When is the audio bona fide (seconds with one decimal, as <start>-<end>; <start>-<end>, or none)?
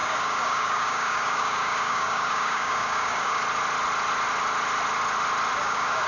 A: 3.4-5.6